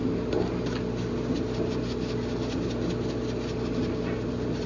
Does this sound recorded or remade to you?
recorded